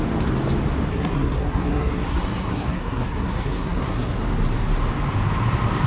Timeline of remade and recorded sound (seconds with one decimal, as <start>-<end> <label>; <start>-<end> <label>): 0.0-0.9 recorded; 0.9-4.1 remade; 4.1-5.9 recorded